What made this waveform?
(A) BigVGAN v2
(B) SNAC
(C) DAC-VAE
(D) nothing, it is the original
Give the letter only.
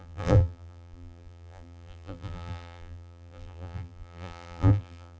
A